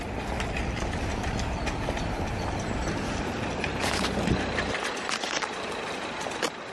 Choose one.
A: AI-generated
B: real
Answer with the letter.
B